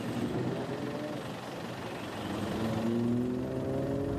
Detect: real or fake real